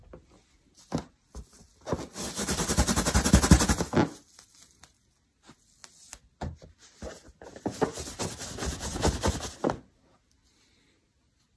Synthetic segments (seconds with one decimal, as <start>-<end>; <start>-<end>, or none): none